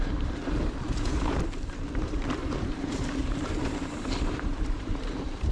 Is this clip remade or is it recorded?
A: remade